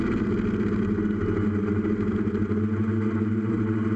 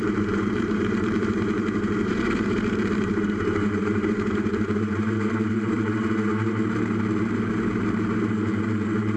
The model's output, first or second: second